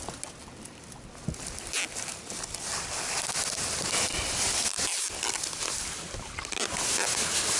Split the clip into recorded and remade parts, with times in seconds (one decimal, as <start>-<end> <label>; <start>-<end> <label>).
0.0-7.6 recorded

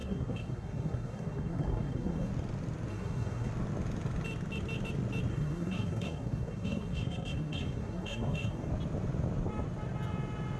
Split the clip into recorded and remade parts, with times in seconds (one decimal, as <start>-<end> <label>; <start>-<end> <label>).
0.0-2.3 remade; 2.3-2.9 recorded; 2.9-3.5 remade; 3.5-5.3 recorded; 5.3-8.7 remade; 8.7-10.6 recorded

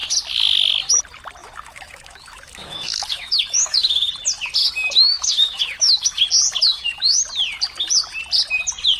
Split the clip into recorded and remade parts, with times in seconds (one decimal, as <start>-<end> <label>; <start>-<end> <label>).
0.0-1.4 recorded; 1.4-4.1 remade; 4.1-4.6 recorded; 4.6-6.2 remade; 6.2-6.7 recorded; 6.7-7.2 remade; 7.2-9.0 recorded

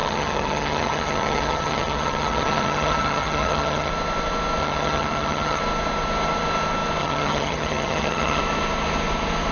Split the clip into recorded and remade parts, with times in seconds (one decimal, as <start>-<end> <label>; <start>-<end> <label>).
0.0-3.9 remade; 3.9-4.6 recorded; 4.6-5.6 remade; 5.6-7.0 recorded; 7.0-8.4 remade; 8.4-9.5 recorded

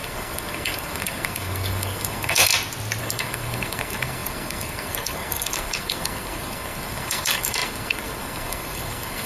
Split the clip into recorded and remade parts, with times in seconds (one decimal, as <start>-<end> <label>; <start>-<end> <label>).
0.0-2.5 remade; 2.5-3.0 recorded; 3.0-9.3 remade